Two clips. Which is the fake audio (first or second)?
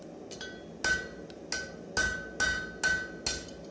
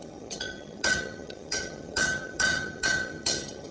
second